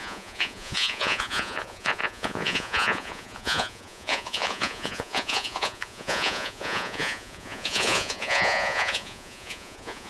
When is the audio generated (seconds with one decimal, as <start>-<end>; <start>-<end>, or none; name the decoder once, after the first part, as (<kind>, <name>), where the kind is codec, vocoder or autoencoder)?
0.0-10.1 (vocoder, Vocos)